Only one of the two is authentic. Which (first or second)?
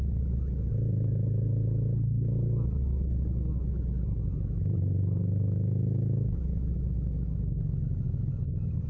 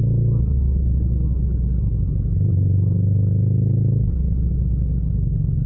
second